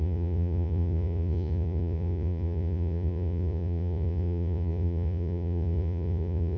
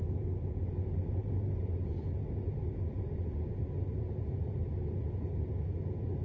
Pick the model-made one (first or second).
first